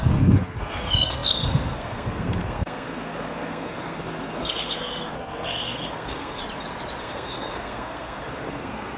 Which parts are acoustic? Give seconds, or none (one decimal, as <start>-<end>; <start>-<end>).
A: 6.4-7.0